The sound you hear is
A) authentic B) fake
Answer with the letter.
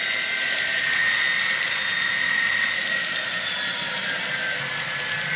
A